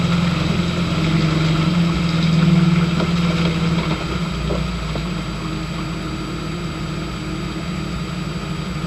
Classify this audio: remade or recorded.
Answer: recorded